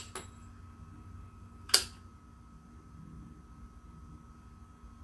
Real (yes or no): yes